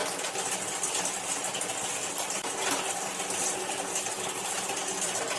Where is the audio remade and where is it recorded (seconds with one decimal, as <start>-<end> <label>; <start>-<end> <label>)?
0.0-5.4 recorded